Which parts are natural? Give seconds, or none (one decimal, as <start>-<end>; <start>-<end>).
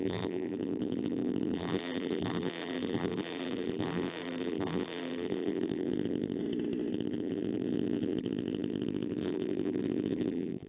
6.4-6.9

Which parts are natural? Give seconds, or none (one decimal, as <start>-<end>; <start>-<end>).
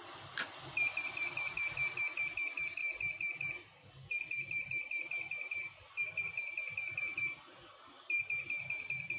0.0-9.2